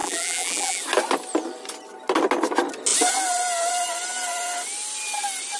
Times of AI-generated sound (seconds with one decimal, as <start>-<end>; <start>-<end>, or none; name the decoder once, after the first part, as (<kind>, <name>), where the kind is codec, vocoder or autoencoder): 0.0-0.8 (vocoder, BigVGAN v2)